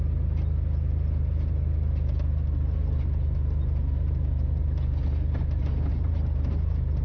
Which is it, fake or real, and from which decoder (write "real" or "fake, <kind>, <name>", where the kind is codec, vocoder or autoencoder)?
real